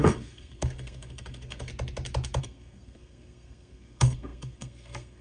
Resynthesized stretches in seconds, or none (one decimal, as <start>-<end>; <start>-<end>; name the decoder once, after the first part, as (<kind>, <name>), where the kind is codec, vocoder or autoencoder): 0.0-1.7 (codec, SNAC); 2.4-5.2